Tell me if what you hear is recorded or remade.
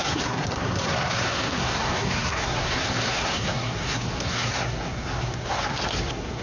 remade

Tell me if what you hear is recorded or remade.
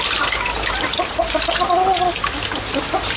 recorded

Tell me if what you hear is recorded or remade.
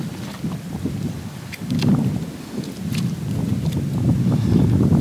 recorded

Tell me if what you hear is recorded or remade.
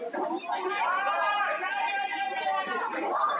recorded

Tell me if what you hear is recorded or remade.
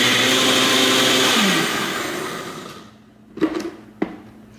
recorded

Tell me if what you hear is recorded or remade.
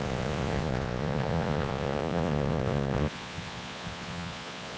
remade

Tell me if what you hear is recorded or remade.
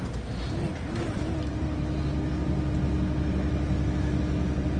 recorded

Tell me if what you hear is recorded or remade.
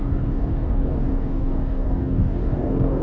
remade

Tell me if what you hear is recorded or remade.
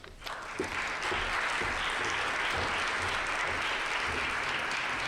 recorded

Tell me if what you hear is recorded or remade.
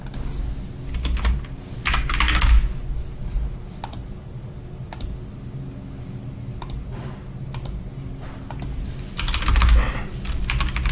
recorded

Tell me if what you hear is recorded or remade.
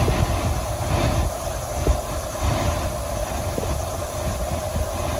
recorded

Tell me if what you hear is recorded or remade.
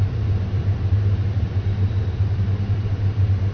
remade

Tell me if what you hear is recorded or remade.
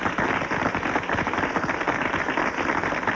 recorded